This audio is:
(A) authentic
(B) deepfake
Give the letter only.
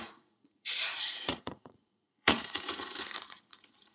B